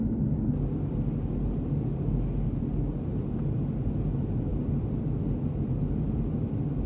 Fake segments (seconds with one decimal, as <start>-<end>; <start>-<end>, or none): none